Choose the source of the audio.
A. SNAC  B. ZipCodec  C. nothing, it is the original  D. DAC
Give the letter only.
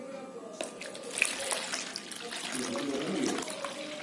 C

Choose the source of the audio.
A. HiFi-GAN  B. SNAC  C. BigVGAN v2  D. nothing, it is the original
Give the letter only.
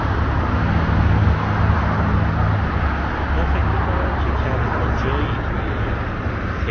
D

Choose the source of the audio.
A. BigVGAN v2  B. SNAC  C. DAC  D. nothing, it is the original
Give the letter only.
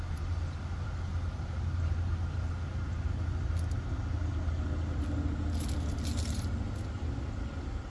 D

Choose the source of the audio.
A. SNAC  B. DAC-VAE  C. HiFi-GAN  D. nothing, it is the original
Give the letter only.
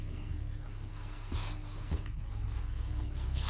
A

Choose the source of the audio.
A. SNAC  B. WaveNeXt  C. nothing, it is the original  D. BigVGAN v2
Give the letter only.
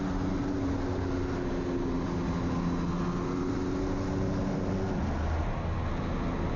C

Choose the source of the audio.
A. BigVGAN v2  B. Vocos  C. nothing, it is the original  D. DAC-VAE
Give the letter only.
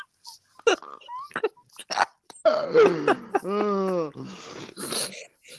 C